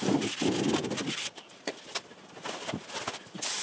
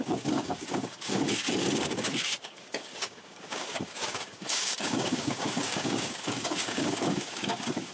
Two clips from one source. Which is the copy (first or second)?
second